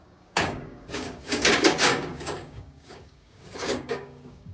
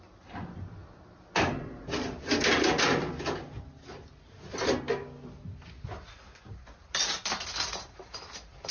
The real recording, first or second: second